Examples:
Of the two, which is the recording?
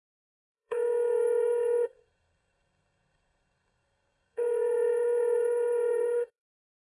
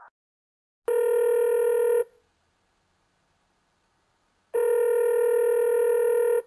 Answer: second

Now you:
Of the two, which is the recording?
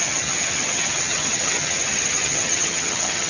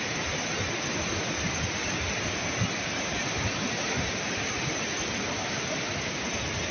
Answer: second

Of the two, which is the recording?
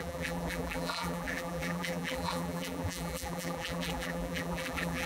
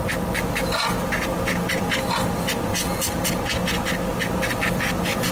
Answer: second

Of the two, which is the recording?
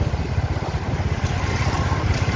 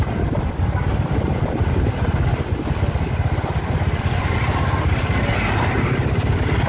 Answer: second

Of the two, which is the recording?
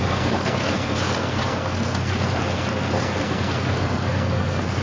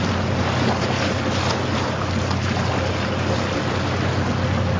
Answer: second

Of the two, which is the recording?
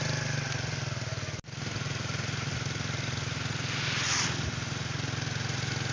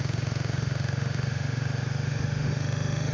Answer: first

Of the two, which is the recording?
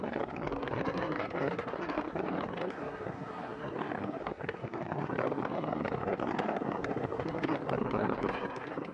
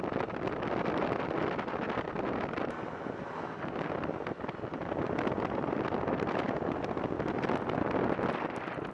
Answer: second